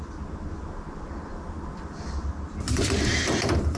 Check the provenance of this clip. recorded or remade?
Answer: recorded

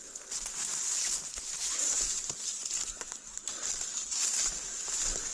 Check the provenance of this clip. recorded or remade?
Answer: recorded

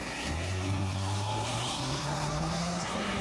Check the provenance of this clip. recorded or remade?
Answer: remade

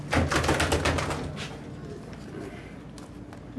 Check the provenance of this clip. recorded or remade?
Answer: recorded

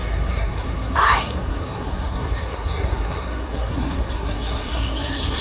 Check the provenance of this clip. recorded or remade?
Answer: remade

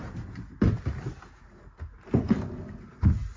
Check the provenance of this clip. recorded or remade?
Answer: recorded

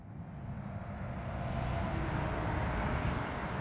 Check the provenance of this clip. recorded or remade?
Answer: recorded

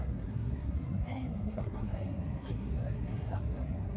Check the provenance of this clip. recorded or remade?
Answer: remade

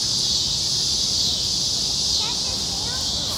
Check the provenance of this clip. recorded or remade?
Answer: recorded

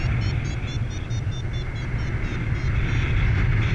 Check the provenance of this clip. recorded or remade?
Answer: recorded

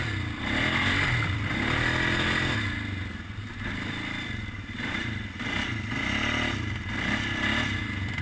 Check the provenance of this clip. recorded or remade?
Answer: recorded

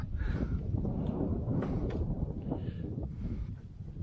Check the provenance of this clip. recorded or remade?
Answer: recorded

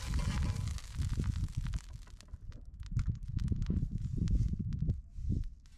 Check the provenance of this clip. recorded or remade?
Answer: recorded